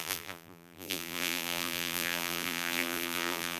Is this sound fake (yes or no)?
yes